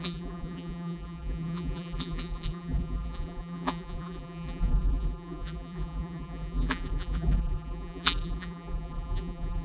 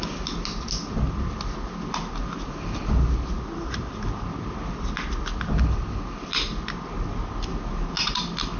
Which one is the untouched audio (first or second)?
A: second